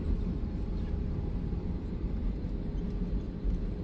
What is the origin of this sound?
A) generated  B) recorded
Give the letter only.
B